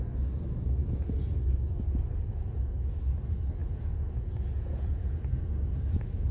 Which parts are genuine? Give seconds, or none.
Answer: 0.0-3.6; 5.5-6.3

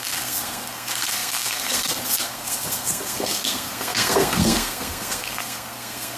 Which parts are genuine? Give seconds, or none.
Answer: none

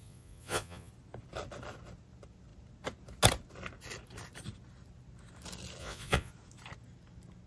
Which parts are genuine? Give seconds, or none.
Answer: 0.9-5.8; 6.3-7.5

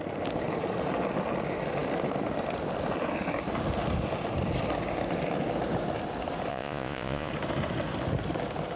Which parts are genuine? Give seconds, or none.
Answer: 0.0-6.5; 7.3-8.8